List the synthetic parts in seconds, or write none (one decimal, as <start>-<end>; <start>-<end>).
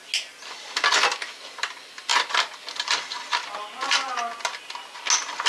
none